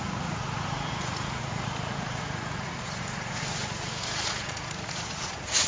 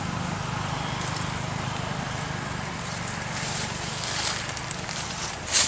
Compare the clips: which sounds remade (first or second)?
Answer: first